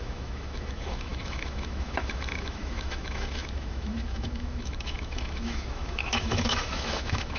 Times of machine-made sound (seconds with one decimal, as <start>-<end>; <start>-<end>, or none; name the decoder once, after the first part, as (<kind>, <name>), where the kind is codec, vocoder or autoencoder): 0.0-7.4 (autoencoder, DAC-VAE)

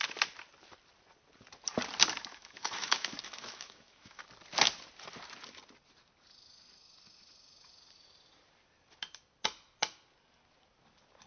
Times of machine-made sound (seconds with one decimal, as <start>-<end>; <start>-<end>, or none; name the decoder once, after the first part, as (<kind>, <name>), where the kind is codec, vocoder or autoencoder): 2.3-4.2 (autoencoder, DAC-VAE)

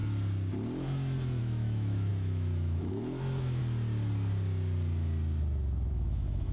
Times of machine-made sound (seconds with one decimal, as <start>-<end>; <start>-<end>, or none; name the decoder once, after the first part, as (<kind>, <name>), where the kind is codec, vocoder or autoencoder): 1.4-3.6 (autoencoder, DAC-VAE); 5.9-6.5

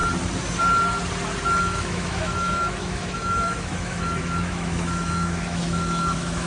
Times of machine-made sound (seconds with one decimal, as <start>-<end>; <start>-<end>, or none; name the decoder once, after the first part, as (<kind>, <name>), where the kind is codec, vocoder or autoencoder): 1.6-6.5 (autoencoder, DAC-VAE)